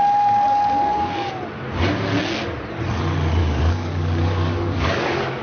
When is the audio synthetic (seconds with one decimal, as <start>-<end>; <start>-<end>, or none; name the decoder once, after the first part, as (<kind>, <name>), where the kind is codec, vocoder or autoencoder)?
0.0-1.3 (codec, DAC); 3.4-5.4